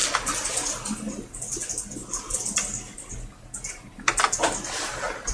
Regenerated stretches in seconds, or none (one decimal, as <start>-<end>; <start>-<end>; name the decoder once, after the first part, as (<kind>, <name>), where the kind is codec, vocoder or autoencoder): none